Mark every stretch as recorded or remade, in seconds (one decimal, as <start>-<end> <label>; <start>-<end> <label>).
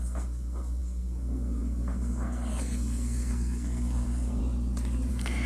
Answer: 0.0-4.4 remade; 4.4-5.1 recorded; 5.1-5.5 remade